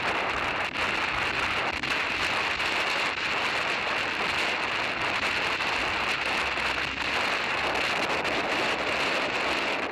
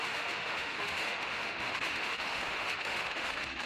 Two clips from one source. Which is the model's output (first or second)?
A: second